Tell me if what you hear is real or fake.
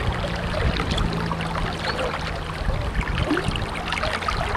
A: real